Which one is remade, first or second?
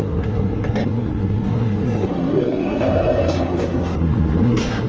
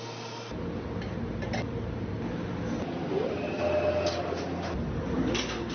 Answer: first